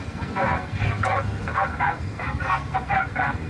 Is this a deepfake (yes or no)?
yes